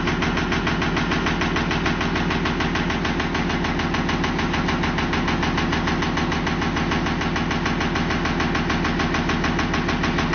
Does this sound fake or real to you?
real